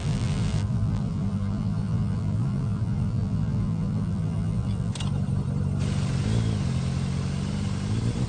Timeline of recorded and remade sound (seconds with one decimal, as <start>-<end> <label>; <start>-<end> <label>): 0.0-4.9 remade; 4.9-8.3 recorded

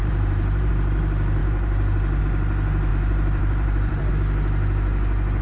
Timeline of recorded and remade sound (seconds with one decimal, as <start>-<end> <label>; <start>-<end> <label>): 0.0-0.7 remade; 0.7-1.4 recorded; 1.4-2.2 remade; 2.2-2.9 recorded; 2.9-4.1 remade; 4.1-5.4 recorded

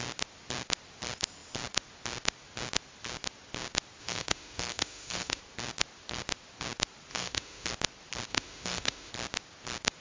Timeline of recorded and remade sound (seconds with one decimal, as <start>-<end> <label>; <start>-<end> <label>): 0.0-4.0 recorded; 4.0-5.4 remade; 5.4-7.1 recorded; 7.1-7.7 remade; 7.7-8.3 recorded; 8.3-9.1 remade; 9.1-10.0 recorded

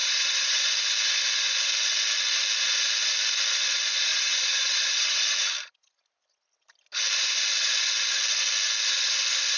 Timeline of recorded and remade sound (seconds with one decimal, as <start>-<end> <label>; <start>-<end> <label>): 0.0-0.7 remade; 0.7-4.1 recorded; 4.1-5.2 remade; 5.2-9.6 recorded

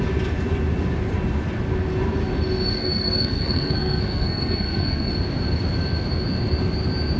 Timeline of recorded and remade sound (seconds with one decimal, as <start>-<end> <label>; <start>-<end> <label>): 0.0-2.8 recorded; 2.8-5.1 remade; 5.1-7.2 recorded

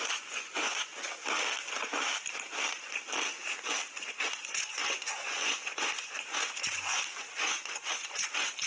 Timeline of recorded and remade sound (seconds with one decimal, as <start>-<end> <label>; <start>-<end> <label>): 0.0-0.9 remade; 0.9-4.0 recorded; 4.0-8.7 remade

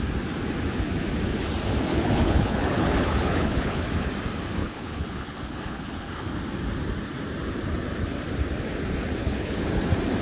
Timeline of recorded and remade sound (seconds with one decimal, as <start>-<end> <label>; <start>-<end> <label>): 0.0-1.9 recorded; 1.9-4.1 remade; 4.1-4.6 recorded; 4.6-6.4 remade; 6.4-9.2 recorded; 9.2-9.7 remade; 9.7-10.2 recorded